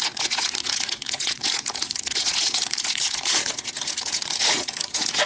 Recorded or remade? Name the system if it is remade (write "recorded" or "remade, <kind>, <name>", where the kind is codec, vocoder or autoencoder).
remade, vocoder, Vocos